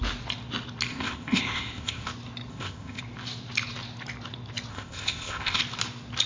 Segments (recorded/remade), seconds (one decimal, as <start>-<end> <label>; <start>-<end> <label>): 0.0-0.9 recorded; 0.9-2.1 remade; 2.1-2.5 recorded; 2.5-3.0 remade; 3.0-4.7 recorded; 4.7-5.6 remade; 5.6-6.3 recorded